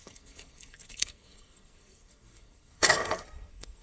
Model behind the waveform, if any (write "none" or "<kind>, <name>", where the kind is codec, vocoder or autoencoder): codec, SNAC